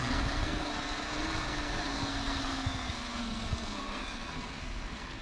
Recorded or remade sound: remade